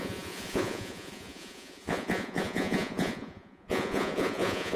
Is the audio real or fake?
fake